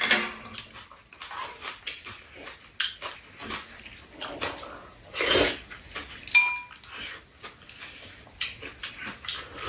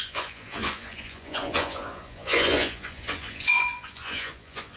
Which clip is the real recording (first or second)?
first